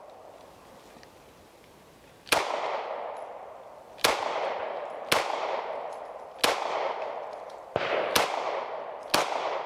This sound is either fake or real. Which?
real